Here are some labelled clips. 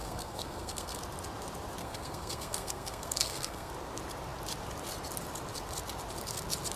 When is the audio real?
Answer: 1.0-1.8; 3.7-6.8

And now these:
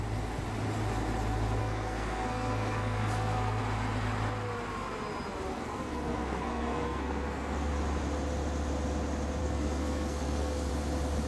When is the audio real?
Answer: 0.0-1.6; 3.6-5.5; 7.7-9.4; 10.7-11.3

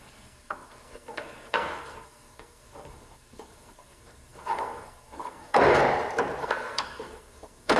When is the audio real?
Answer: 5.8-6.4

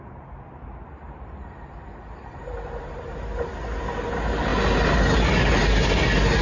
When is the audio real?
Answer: 0.0-6.4

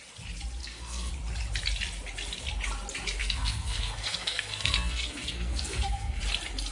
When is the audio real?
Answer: 0.0-0.6; 1.1-3.2; 6.2-6.7